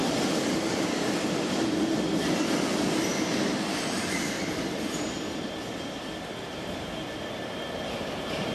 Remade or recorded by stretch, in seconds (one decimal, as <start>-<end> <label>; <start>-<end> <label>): 0.0-8.5 recorded